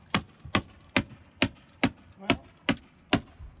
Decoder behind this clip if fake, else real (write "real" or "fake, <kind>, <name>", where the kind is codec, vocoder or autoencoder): real